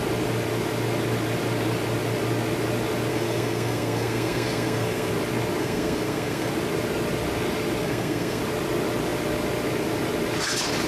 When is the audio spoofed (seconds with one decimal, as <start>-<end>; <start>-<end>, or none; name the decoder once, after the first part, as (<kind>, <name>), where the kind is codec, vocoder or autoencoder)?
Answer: 3.1-5.1 (codec, SNAC); 5.6-6.5; 7.8-8.4